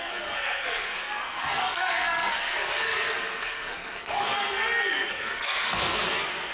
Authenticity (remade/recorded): remade